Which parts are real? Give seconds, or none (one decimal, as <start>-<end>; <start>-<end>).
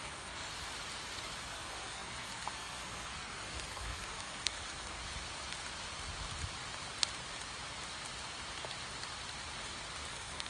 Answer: 0.5-1.4; 5.0-10.1